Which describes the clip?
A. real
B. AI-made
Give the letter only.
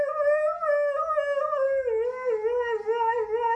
A